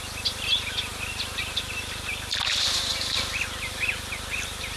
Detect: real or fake real